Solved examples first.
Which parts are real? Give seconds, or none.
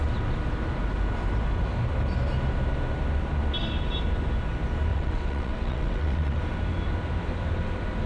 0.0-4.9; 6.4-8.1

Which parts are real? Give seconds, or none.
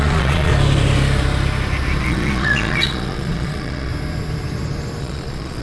0.5-2.0; 3.9-5.0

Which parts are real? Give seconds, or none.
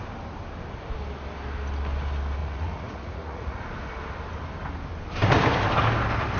0.0-2.4; 3.6-6.4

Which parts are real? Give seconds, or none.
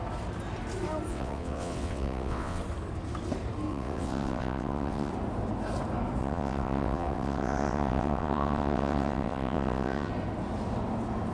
0.0-1.1; 2.6-3.7; 5.1-6.2; 10.1-11.3